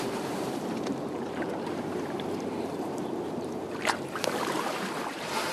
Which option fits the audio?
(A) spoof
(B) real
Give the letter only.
A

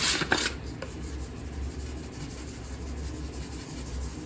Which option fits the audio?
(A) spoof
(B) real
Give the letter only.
B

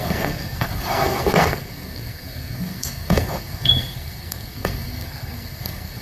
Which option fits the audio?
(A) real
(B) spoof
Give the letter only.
B